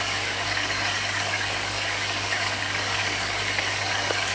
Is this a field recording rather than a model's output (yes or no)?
no